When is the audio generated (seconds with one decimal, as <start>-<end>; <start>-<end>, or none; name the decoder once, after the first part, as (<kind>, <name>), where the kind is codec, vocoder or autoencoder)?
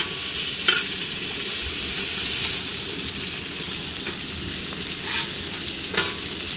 none